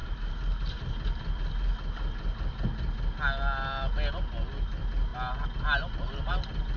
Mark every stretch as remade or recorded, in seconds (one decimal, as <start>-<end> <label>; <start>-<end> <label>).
0.0-6.8 recorded